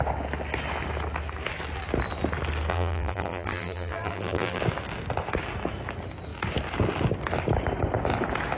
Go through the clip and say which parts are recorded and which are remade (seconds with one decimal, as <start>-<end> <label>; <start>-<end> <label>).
0.0-2.7 recorded; 2.7-4.6 remade; 4.6-8.6 recorded